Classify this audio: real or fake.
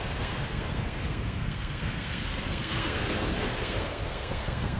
fake